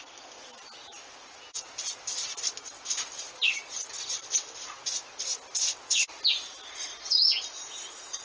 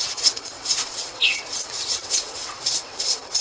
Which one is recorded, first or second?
first